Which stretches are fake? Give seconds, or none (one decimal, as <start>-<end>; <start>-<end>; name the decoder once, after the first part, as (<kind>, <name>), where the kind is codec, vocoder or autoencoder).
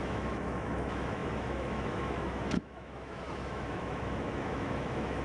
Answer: 0.0-5.2 (autoencoder, DAC-VAE)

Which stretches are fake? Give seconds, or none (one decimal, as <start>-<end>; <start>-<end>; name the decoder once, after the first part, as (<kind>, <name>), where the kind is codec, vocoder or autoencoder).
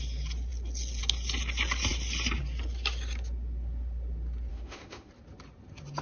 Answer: 4.5-5.1 (autoencoder, DAC-VAE)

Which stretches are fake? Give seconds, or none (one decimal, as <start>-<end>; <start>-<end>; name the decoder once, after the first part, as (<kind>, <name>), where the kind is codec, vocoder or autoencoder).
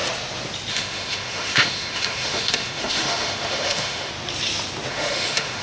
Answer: 0.7-4.1 (autoencoder, DAC-VAE); 4.9-5.6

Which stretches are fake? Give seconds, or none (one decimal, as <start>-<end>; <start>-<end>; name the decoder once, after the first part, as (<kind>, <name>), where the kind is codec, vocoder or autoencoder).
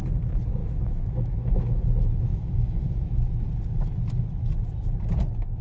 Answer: 0.6-1.8 (autoencoder, DAC-VAE); 2.3-3.3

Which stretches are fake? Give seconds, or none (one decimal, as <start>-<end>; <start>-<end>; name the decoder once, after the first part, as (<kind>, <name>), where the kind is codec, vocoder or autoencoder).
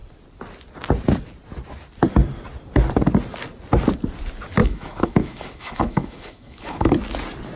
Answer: 4.6-6.9 (autoencoder, DAC-VAE)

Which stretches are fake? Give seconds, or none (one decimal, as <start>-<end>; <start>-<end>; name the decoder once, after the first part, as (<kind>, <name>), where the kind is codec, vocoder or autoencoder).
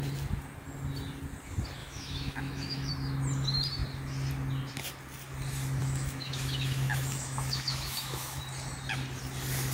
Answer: 1.8-2.9 (autoencoder, DAC-VAE); 5.8-8.4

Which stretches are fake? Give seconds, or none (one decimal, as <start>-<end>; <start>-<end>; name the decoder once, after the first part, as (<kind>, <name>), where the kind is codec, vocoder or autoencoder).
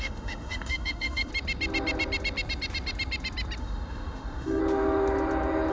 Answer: 0.0-1.3 (autoencoder, DAC-VAE); 3.6-4.6